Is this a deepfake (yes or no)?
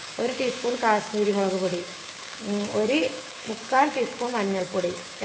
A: yes